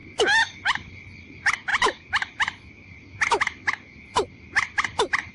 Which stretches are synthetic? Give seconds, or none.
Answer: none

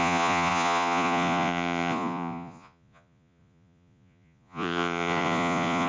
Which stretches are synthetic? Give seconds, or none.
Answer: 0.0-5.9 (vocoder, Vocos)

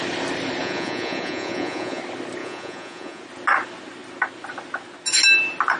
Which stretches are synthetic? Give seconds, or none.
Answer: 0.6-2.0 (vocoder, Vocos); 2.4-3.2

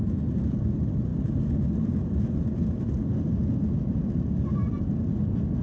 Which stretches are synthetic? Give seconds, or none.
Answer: none

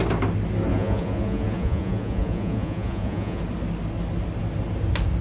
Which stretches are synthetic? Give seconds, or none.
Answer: 0.7-3.4 (vocoder, Vocos)